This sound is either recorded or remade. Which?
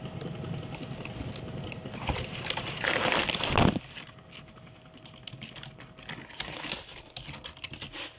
recorded